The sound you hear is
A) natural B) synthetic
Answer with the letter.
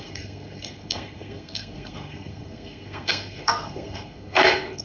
B